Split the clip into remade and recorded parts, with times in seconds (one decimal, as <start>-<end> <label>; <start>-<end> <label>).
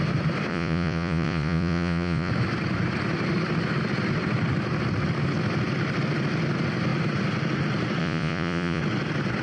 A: 0.0-0.5 recorded; 0.5-2.3 remade; 2.3-8.0 recorded; 8.0-8.8 remade; 8.8-9.4 recorded